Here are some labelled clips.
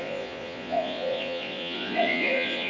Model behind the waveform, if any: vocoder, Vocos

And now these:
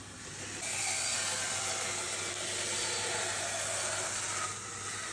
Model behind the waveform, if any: none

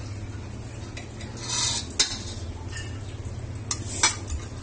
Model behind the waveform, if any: none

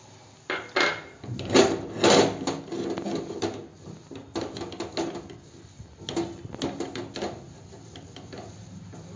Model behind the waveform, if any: none